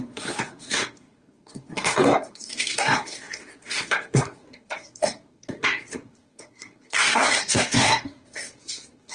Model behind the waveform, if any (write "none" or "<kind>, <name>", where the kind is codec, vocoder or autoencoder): codec, SNAC